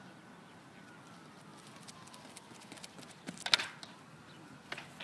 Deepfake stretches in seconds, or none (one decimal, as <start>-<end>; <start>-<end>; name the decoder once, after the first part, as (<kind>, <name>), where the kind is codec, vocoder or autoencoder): none

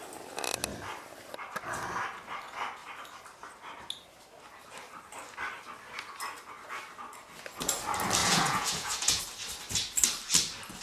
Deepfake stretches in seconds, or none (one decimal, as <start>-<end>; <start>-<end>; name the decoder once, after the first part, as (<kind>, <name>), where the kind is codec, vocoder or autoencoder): 8.2-9.2 (vocoder, Vocos)

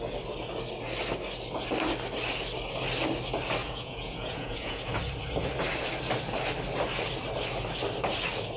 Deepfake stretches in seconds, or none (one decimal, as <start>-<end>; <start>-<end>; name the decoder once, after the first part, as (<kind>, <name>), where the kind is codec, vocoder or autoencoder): 3.6-4.8 (vocoder, Vocos)